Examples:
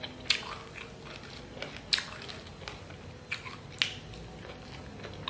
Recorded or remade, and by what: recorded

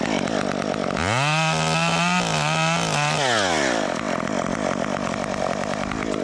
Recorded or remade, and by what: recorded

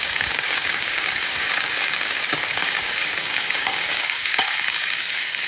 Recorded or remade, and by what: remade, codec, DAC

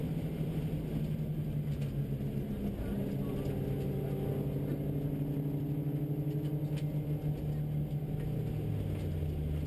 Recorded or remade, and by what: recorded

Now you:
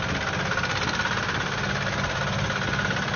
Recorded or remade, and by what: recorded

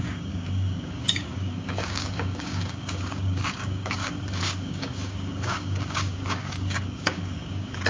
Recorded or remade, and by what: remade, codec, DAC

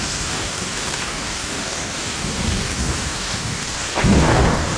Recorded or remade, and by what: remade, codec, DAC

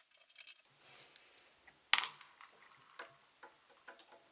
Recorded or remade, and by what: recorded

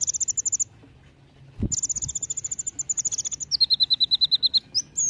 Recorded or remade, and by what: recorded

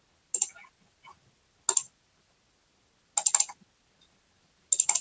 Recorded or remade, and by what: recorded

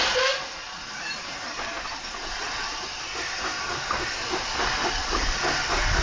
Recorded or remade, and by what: recorded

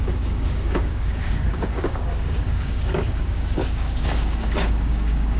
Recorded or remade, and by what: remade, codec, DAC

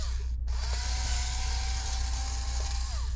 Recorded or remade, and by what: recorded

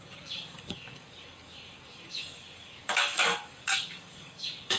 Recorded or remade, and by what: remade, codec, DAC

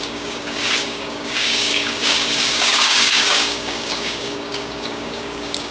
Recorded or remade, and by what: remade, codec, DAC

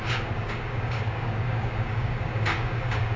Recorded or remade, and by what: remade, codec, DAC